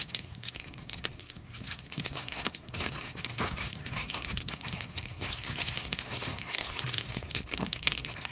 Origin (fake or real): fake